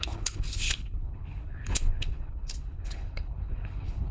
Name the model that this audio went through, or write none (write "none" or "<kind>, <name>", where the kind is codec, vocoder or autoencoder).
codec, HILCodec